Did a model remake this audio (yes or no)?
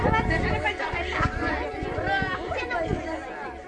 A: no